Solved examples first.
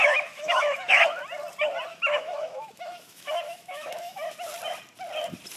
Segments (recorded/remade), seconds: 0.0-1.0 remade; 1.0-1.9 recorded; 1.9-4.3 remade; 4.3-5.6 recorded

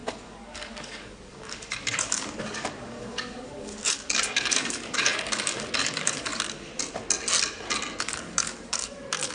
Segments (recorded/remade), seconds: 0.0-6.7 remade; 6.7-8.0 recorded; 8.0-9.3 remade

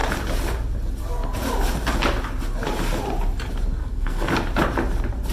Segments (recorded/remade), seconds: 0.0-3.8 recorded; 3.8-4.3 remade; 4.3-5.3 recorded

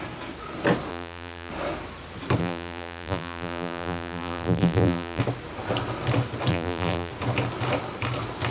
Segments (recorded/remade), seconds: 0.0-0.9 recorded; 0.9-1.5 remade; 1.5-2.4 recorded; 2.4-5.2 remade; 5.2-6.5 recorded; 6.5-7.1 remade; 7.1-8.5 recorded

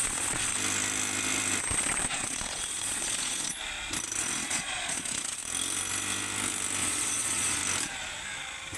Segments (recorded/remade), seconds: 0.0-0.5 remade; 0.5-2.1 recorded; 2.1-3.5 remade; 3.5-4.2 recorded; 4.2-5.4 remade; 5.4-6.8 recorded; 6.8-7.6 remade; 7.6-8.8 recorded

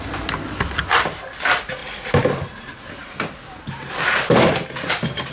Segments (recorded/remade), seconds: 0.0-5.3 recorded

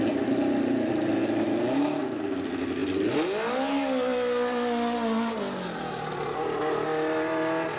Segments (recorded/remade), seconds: 0.0-7.8 recorded

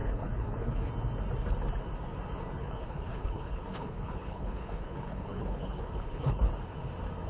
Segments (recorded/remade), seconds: 0.0-0.9 remade; 0.9-2.6 recorded; 2.6-6.5 remade; 6.5-7.3 recorded